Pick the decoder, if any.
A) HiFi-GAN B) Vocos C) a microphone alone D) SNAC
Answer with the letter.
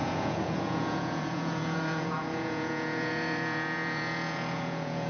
B